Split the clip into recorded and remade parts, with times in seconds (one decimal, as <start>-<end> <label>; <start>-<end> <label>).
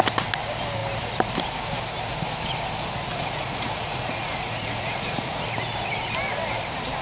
0.0-3.1 recorded; 3.1-5.4 remade; 5.4-7.0 recorded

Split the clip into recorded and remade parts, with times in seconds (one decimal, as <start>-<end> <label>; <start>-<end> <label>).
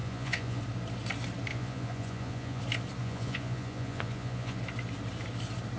0.0-0.6 remade; 0.6-1.5 recorded; 1.5-2.6 remade; 2.6-3.0 recorded; 3.0-4.6 remade; 4.6-5.8 recorded